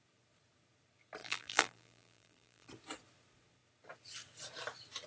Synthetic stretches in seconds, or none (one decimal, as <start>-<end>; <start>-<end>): 1.2-2.7